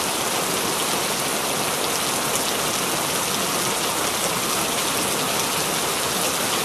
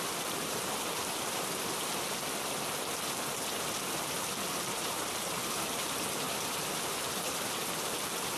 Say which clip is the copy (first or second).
second